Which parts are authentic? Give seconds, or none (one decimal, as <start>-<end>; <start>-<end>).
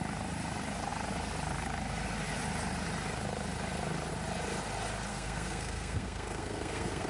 0.0-5.1